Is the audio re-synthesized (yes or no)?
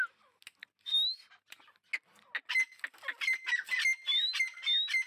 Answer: no